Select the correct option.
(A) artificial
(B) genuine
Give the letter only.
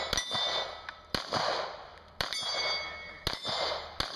B